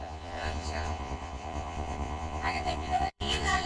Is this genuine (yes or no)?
no